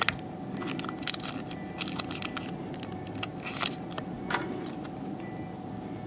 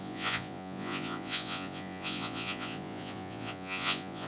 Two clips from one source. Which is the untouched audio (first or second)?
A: first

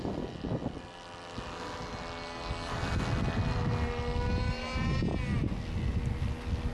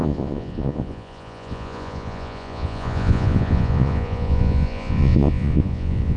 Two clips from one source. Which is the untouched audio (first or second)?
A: first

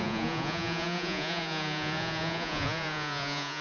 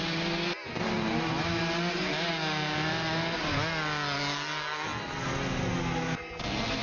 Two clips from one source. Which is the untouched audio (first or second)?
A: second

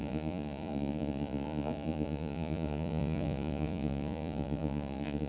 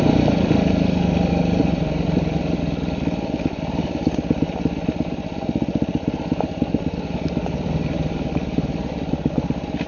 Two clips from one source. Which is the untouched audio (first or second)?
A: second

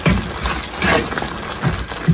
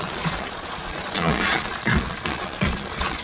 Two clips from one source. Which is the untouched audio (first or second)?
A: first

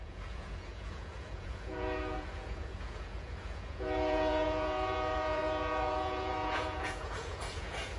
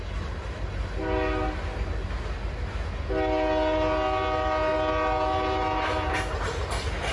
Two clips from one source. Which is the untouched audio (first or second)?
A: second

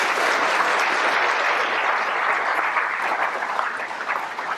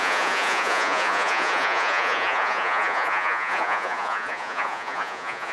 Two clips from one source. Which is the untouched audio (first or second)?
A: first